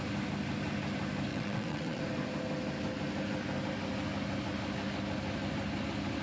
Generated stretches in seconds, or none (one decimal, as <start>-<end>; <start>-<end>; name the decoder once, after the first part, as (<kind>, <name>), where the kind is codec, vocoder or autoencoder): 1.3-2.0 (vocoder, WaveNeXt)